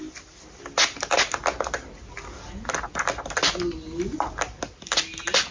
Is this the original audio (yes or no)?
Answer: yes